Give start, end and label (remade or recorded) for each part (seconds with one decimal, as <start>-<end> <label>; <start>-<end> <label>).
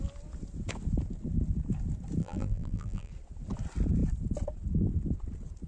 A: 0.0-2.2 recorded; 2.2-3.1 remade; 3.1-5.7 recorded